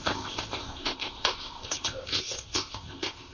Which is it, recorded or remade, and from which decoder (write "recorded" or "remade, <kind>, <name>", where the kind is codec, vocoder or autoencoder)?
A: remade, codec, ZipCodec